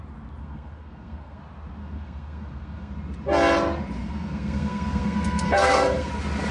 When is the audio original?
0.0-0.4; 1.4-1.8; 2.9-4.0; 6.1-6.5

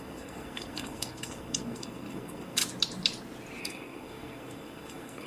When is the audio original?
2.6-3.6

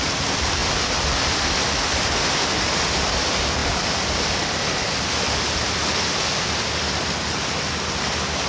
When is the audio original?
0.0-8.5

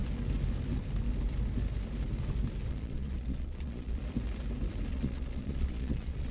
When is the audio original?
0.0-2.7; 4.0-4.9

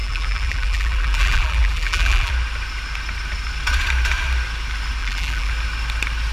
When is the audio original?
2.3-5.0; 5.5-6.3

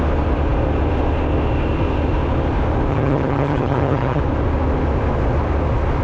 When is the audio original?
0.0-2.9; 4.2-6.0

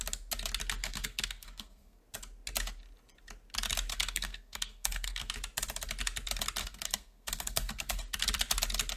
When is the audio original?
0.0-0.8; 2.0-3.9; 5.3-6.6; 8.0-9.0